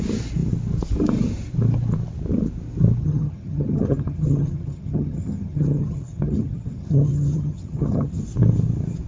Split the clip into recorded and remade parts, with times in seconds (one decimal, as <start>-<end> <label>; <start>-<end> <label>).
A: 0.0-3.0 recorded; 3.0-8.2 remade; 8.2-9.1 recorded